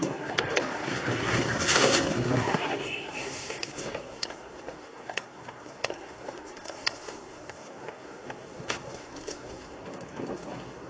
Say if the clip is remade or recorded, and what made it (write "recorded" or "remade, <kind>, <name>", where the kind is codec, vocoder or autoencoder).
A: remade, codec, SNAC